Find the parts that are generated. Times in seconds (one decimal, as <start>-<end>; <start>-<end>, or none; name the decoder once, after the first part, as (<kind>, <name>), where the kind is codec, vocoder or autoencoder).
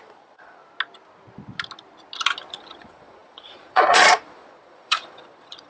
0.0-0.6 (vocoder, Vocos); 2.5-5.7